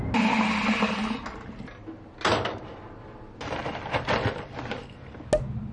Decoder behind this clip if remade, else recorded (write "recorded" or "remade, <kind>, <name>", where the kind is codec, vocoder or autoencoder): recorded